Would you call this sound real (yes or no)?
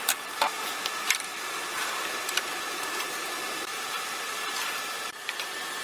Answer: no